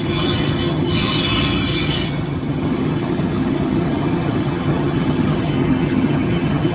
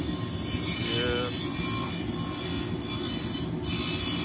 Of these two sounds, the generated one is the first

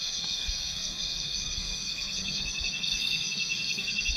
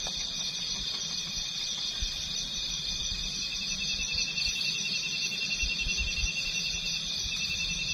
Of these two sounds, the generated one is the first